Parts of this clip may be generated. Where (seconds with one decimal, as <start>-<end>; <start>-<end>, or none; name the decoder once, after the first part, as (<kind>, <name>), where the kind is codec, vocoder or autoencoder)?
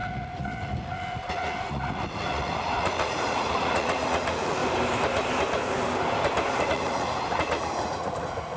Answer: 0.0-4.6 (vocoder, Vocos); 6.7-8.6